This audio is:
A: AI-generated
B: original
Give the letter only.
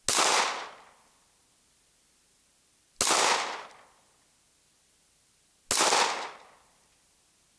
B